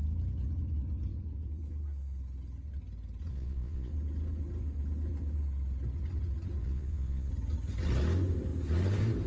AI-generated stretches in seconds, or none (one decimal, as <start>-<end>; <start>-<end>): 3.3-3.9; 6.6-7.3